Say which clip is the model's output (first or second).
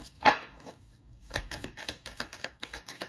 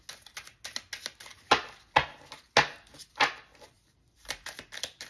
first